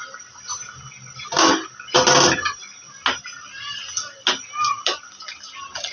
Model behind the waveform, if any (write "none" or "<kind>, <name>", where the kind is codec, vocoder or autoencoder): none